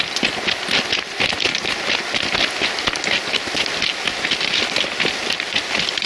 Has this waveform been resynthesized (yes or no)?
no